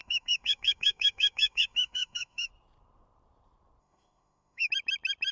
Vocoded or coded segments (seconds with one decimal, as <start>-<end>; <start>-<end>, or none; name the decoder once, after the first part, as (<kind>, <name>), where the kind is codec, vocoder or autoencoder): 0.0-2.5 (autoencoder, DAC-VAE); 3.8-4.7